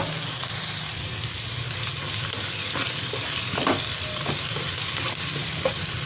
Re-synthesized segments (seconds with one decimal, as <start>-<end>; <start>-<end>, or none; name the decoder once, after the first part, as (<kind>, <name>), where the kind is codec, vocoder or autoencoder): none